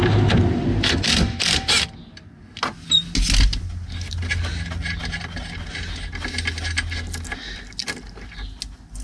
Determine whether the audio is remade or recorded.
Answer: recorded